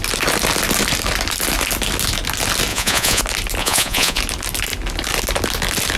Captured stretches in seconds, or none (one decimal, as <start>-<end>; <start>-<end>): 0.0-2.7; 3.2-3.6; 4.2-6.0